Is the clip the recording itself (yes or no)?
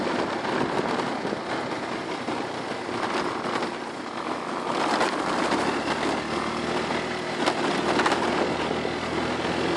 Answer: yes